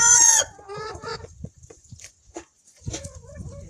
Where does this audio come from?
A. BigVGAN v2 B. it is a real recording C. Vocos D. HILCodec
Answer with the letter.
C